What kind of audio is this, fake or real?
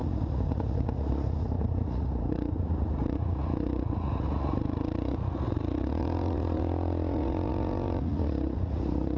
fake